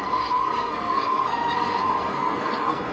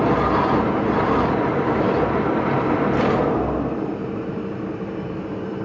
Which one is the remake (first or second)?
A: first